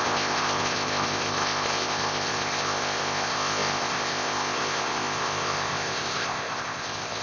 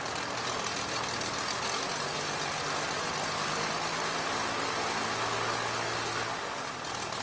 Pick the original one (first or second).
second